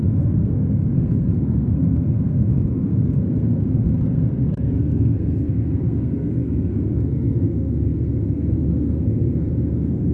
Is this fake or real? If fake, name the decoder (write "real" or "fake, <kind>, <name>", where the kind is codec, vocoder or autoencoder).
fake, codec, SNAC